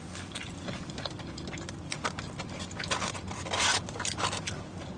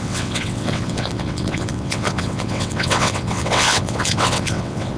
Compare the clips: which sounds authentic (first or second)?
first